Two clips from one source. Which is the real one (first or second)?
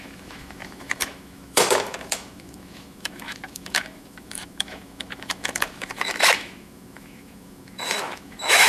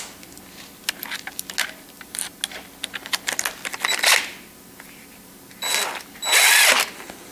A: second